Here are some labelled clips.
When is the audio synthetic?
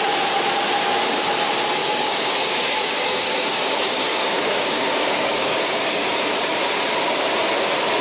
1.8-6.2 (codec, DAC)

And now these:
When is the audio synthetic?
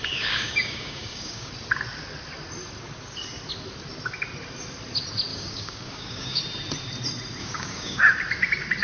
0.0-1.5 (codec, DAC); 5.3-6.4; 7.4-8.0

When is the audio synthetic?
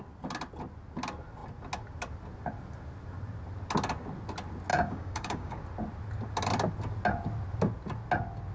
4.7-5.6 (codec, DAC)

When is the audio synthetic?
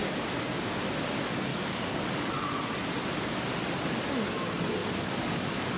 1.5-2.3 (codec, DAC); 4.8-5.8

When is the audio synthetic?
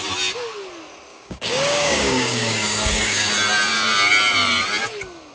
1.1-3.3 (codec, DAC)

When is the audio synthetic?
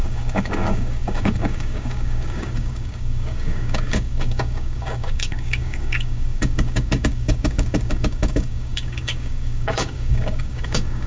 0.0-11.1 (codec, DAC)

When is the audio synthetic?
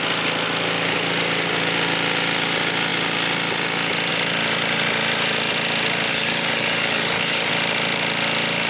6.1-7.5 (codec, DAC)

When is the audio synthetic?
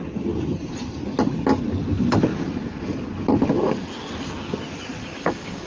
5.0-5.7 (codec, DAC)